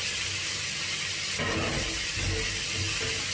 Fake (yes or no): no